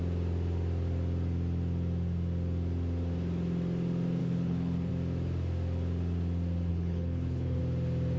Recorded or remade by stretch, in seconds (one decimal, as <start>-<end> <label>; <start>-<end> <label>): 0.0-4.2 recorded; 4.2-4.9 remade; 4.9-6.7 recorded; 6.7-7.6 remade; 7.6-8.2 recorded